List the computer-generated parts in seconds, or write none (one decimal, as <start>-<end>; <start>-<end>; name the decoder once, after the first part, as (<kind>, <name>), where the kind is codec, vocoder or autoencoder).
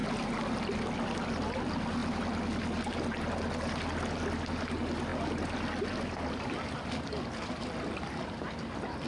none